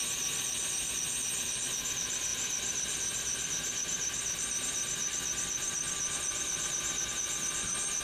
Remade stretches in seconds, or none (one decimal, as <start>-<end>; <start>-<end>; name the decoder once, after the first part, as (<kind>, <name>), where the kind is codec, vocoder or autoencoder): 2.3-7.1 (vocoder, BigVGAN v2)